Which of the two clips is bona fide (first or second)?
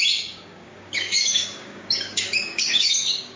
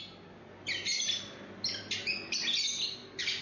second